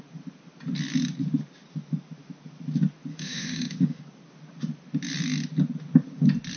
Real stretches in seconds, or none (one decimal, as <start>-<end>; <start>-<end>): 0.0-3.1; 4.0-6.6